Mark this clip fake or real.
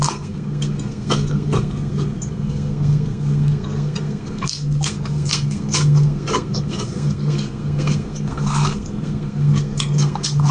fake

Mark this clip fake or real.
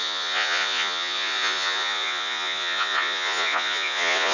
fake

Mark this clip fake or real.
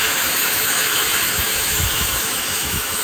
fake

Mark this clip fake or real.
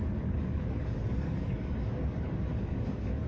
fake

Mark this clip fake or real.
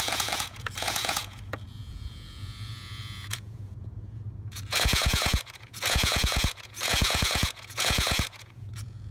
fake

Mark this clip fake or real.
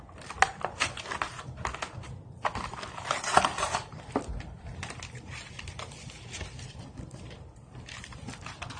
real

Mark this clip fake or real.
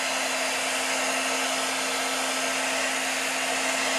real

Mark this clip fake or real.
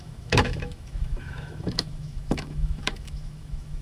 fake